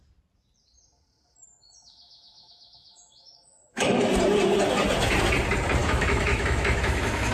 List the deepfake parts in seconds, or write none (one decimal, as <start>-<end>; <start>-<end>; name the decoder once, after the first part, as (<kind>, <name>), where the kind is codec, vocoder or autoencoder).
1.5-4.1 (autoencoder, DAC-VAE); 5.8-7.3